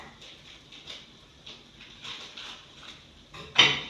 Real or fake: real